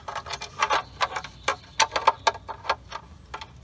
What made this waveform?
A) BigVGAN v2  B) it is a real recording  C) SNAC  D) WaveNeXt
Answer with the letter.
B